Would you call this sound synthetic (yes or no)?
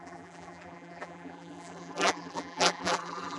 yes